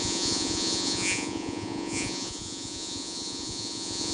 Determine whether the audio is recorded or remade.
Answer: remade